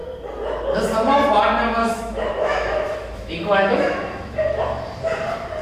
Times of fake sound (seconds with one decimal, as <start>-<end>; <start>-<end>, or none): 1.8-4.6